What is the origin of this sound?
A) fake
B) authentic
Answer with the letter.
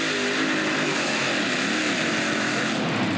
B